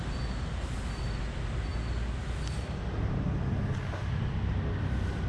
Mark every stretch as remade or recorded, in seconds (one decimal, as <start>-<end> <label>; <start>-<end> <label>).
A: 0.0-5.3 recorded